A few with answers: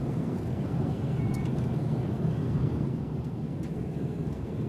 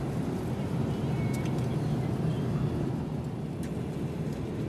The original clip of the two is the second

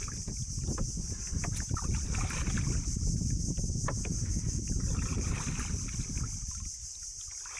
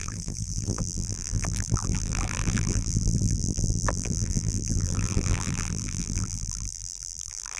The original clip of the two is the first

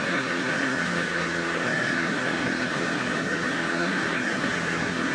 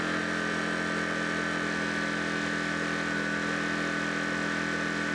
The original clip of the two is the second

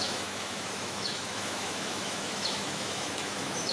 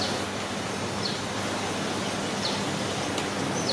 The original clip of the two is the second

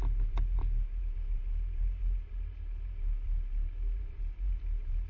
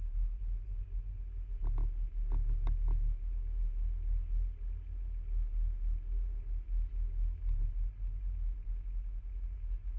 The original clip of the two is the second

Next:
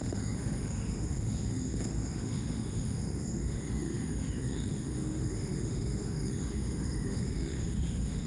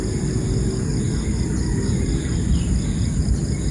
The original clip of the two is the second